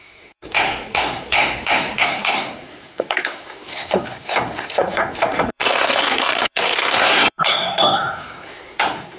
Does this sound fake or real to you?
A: fake